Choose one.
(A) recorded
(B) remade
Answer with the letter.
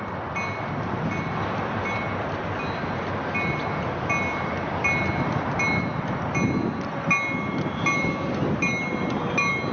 A